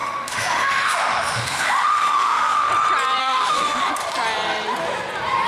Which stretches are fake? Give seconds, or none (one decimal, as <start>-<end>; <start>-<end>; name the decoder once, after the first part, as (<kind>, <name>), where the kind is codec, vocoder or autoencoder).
0.0-2.7 (autoencoder, DAC-VAE); 3.2-3.9